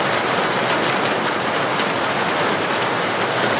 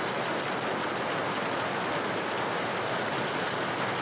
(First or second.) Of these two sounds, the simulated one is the first